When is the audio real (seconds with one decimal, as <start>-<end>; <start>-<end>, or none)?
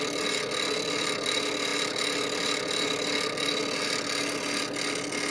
0.0-5.3